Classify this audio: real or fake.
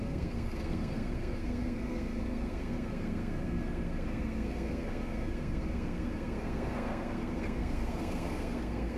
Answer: fake